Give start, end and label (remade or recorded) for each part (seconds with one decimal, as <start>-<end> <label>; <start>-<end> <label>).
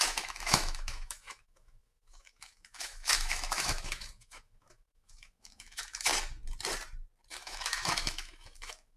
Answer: 0.0-6.1 remade; 6.1-7.3 recorded; 7.3-9.0 remade